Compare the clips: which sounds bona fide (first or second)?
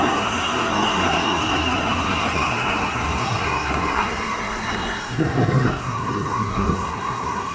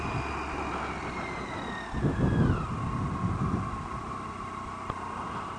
second